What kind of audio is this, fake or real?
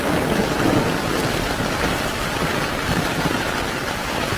real